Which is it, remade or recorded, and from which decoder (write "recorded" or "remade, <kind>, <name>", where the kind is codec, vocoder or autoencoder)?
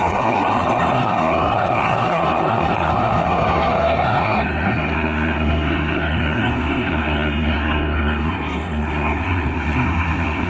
remade, codec, SNAC